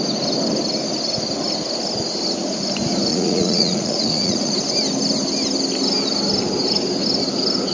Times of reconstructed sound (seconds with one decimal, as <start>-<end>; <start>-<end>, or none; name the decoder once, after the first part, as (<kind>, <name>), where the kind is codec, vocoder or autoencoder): 3.1-4.5 (vocoder, Vocos)